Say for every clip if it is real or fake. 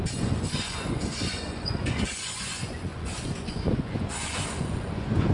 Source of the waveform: fake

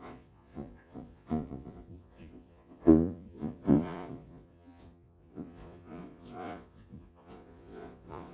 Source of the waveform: fake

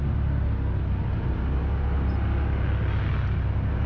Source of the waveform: real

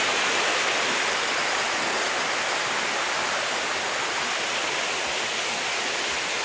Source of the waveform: real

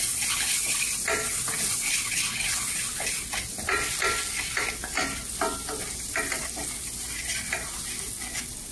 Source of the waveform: real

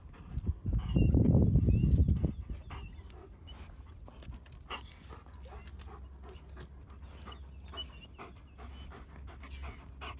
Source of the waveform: real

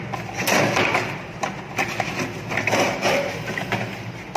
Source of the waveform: real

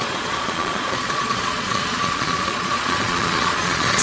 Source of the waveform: fake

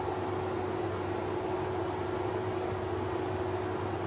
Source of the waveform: real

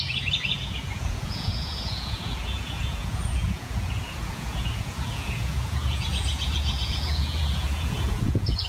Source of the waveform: fake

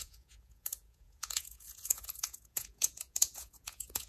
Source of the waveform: fake